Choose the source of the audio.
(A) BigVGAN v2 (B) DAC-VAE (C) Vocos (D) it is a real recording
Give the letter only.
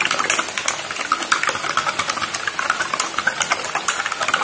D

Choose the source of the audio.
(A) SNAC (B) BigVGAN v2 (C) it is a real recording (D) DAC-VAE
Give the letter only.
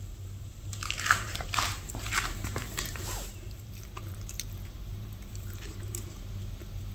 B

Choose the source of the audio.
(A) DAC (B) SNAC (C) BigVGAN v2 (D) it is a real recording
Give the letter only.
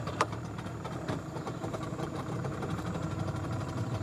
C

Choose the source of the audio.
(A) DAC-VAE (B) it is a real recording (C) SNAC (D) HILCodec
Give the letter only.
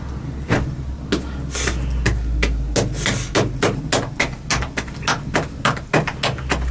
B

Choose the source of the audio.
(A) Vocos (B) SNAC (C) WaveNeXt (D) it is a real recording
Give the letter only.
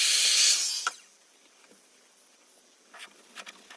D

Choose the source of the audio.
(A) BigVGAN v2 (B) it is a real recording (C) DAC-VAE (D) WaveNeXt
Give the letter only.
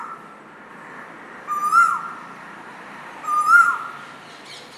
A